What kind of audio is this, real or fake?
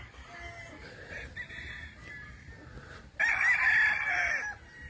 real